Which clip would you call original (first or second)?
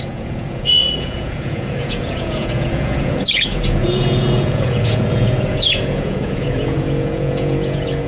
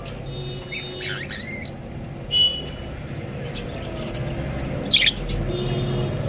second